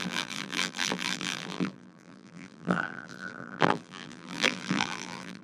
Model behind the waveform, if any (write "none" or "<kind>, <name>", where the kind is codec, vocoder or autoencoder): vocoder, BigVGAN v2